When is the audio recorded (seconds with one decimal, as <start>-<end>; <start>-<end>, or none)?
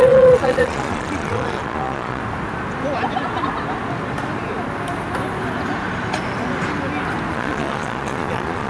2.2-7.3